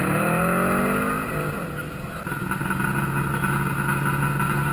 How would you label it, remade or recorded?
recorded